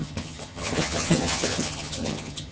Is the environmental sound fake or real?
fake